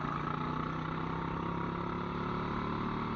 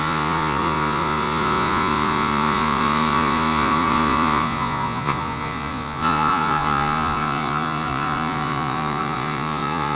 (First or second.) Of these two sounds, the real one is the first